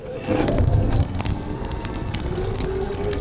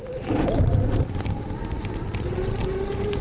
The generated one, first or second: first